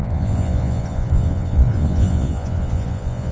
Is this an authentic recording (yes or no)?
no